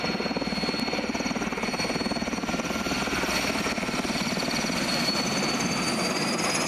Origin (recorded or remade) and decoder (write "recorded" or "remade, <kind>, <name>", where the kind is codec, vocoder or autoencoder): recorded